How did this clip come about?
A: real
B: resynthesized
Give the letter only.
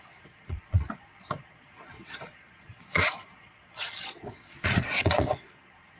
B